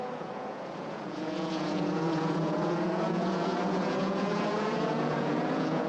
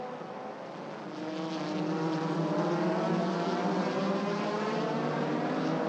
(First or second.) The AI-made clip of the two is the first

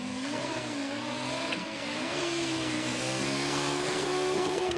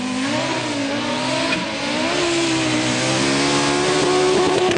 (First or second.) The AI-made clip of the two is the first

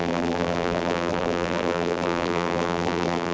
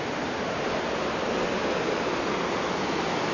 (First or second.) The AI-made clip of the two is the first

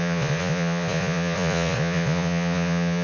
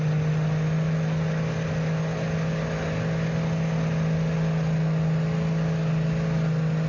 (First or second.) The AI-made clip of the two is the first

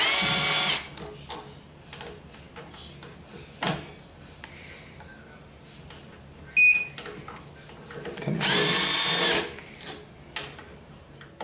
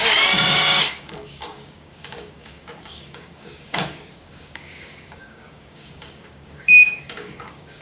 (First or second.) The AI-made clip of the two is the second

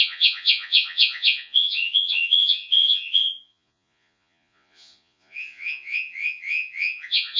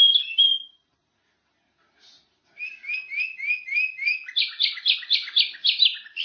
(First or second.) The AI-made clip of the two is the first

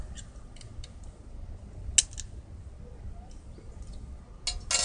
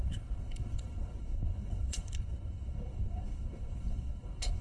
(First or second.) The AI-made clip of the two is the second